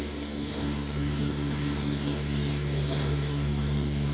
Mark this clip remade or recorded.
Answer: remade